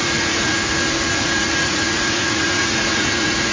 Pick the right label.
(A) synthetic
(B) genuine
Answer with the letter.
A